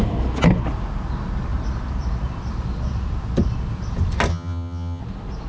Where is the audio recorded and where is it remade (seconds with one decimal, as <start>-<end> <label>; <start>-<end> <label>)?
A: 0.0-4.3 recorded; 4.3-5.0 remade; 5.0-5.5 recorded